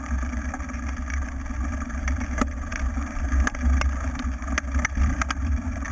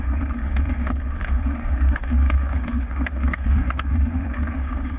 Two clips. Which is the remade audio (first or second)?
second